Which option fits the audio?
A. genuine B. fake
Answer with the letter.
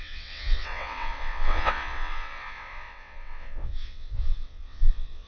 B